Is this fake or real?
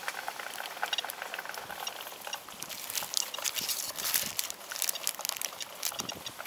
real